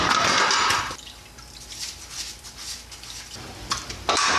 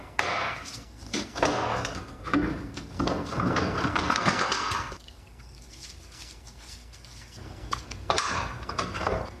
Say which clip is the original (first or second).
first